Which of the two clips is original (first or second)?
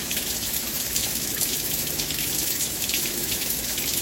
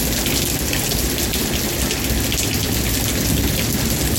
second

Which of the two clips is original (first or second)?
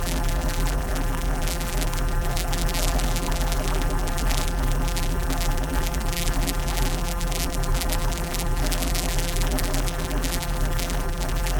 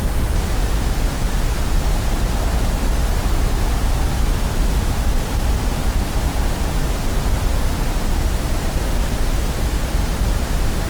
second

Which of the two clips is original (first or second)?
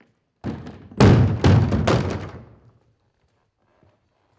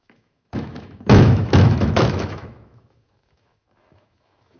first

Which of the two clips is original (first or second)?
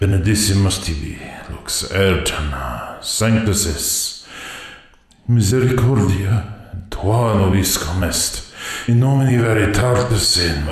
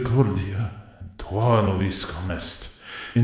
first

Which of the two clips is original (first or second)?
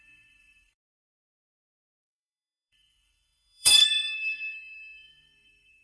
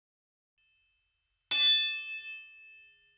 second